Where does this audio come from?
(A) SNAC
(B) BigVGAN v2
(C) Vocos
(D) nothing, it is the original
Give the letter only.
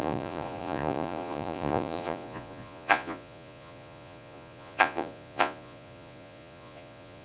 C